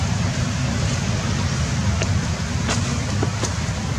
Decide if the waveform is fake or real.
real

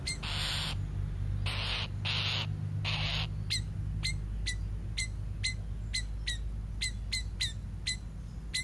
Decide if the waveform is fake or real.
real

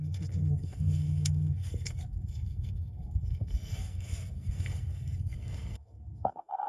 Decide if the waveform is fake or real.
fake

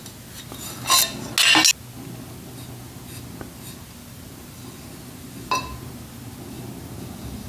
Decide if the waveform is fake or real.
real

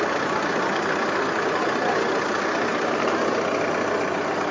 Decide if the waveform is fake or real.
real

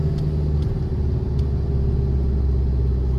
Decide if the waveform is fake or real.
real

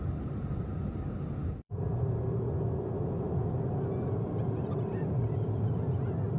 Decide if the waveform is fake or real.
real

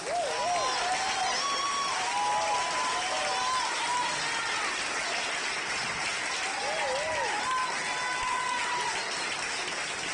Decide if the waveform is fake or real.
real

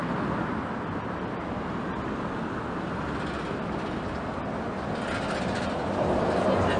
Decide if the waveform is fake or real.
real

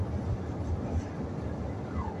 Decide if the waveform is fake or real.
real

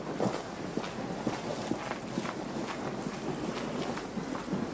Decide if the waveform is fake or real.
real